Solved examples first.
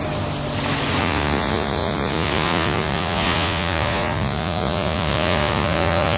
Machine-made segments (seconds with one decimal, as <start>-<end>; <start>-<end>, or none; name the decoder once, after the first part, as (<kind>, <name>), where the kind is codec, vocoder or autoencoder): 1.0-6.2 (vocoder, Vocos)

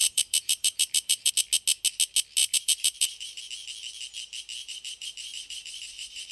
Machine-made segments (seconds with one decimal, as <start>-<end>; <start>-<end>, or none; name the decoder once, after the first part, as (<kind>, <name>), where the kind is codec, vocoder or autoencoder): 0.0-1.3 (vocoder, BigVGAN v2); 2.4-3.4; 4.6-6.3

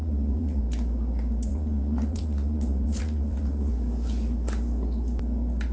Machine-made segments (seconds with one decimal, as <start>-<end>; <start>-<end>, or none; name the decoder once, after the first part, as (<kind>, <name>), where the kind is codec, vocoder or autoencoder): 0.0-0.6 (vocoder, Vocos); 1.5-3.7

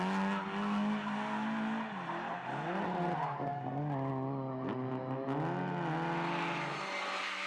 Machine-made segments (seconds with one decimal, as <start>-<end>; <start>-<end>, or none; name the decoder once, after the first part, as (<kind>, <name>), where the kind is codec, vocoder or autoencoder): none

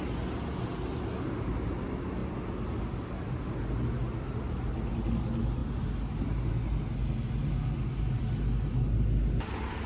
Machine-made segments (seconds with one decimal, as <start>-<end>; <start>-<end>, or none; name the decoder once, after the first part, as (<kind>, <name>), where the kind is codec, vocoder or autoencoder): none